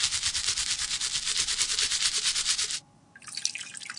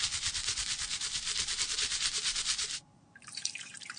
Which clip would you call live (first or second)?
first